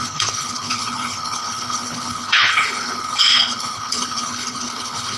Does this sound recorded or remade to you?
remade